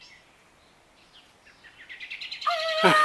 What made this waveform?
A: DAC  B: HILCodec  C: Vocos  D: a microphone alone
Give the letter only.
D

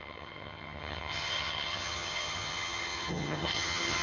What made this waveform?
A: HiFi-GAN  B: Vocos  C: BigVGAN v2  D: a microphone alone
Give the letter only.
A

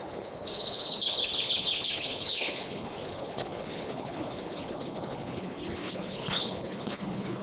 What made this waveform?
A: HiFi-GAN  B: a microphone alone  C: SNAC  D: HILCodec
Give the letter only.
D